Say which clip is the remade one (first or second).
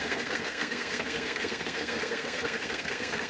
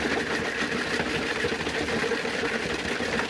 first